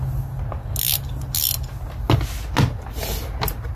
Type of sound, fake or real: real